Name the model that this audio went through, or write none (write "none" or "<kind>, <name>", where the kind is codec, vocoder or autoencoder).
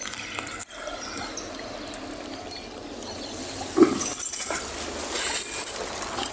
none